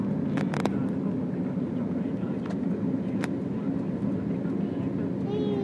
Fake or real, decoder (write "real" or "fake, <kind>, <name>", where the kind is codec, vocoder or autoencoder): real